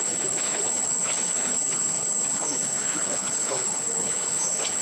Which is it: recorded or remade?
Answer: remade